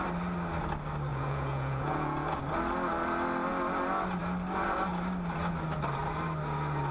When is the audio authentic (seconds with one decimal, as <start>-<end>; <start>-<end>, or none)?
0.0-1.1; 2.4-6.9